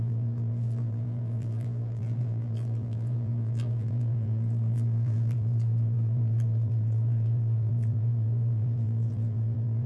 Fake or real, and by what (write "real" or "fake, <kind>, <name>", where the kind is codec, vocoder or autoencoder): fake, vocoder, BigVGAN v2